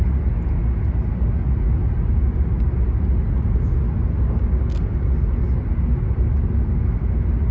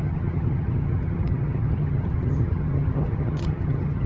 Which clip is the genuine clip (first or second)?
first